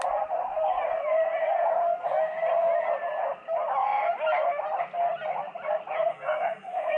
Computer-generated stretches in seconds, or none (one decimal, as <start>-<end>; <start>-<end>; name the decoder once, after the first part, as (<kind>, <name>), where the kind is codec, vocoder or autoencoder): 6.1-7.0 (codec, SNAC)